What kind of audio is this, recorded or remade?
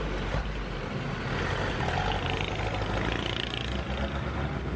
recorded